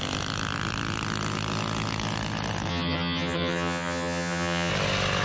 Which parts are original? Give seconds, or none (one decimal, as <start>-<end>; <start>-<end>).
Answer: 0.0-2.7; 4.7-5.2